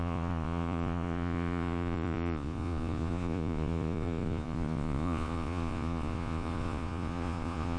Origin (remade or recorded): remade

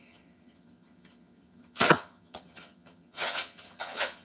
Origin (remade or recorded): remade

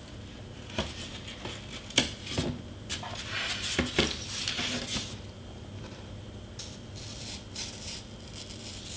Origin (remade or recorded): recorded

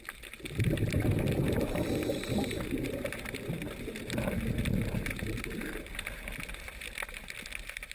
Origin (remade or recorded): remade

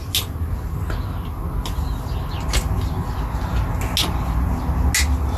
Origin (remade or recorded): recorded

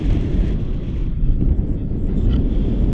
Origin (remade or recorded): recorded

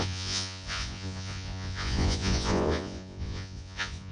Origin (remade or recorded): remade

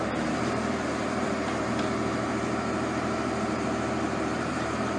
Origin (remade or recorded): remade